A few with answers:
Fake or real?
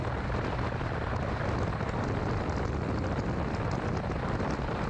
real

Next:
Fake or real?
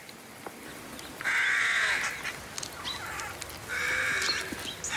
real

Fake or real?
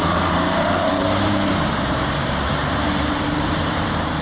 fake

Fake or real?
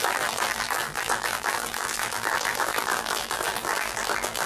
fake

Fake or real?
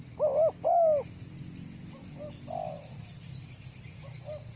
real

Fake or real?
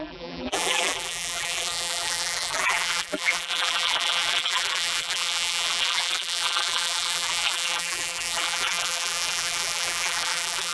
fake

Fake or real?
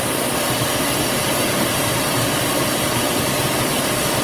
fake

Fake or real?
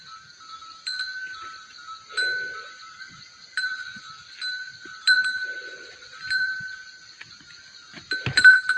fake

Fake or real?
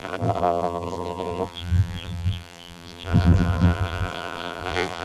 fake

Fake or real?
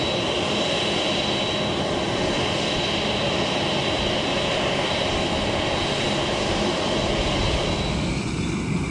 real